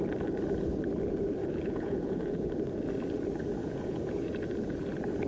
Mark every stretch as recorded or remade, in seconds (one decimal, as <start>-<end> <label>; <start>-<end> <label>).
0.0-1.4 recorded; 1.4-2.5 remade; 2.5-3.6 recorded; 3.6-4.3 remade; 4.3-5.3 recorded